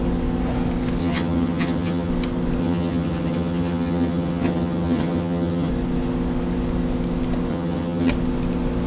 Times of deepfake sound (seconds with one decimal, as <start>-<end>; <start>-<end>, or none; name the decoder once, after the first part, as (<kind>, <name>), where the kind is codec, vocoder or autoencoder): 1.0-2.1 (vocoder, HiFi-GAN); 2.6-5.7; 7.5-8.1